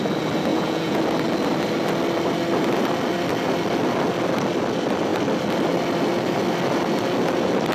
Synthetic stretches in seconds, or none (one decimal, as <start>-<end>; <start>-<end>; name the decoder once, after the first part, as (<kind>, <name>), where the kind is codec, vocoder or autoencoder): 0.5-1.0 (vocoder, Vocos)